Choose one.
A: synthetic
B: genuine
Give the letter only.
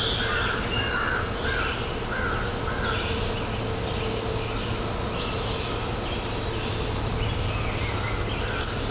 B